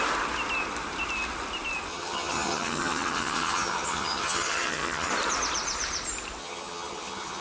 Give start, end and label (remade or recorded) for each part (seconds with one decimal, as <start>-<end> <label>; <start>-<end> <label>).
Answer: 0.0-1.9 recorded; 1.9-5.1 remade; 5.1-6.4 recorded; 6.4-7.4 remade